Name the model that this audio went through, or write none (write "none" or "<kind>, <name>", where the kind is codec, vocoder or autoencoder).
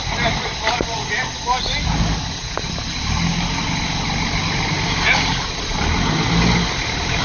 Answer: none